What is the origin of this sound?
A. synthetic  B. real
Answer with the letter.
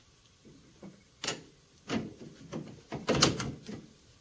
B